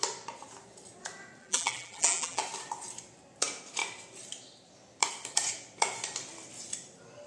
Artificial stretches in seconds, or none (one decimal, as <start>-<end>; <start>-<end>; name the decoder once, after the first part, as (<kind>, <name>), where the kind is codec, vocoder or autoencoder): 1.4-2.4 (vocoder, BigVGAN v2)